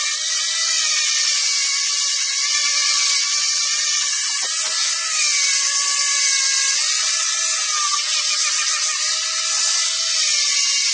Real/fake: real